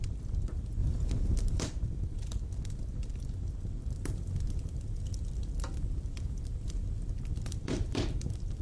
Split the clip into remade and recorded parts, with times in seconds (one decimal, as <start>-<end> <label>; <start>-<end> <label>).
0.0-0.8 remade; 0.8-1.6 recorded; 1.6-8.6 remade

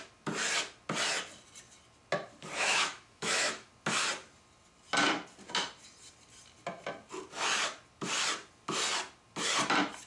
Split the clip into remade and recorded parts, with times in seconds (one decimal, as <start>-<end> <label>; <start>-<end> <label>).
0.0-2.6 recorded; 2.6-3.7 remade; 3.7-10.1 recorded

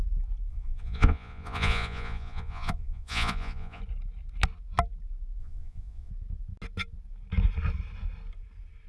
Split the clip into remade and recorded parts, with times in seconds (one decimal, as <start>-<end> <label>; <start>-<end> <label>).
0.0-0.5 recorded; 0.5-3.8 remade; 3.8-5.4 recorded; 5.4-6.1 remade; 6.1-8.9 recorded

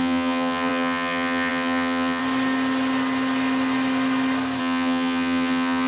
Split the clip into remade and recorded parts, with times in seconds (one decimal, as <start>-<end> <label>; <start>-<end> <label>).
0.0-2.2 remade; 2.2-4.6 recorded; 4.6-5.9 remade

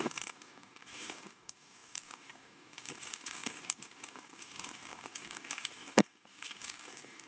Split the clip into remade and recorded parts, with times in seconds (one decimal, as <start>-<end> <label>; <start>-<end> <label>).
0.0-7.3 remade